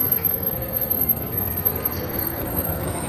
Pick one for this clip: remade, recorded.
remade